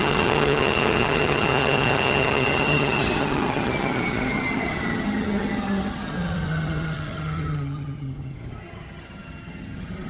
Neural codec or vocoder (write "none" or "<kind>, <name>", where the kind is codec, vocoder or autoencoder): vocoder, HiFi-GAN